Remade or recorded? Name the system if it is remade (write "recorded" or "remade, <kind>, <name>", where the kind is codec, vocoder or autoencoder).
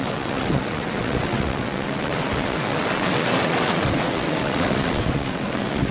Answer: remade, vocoder, WaveNeXt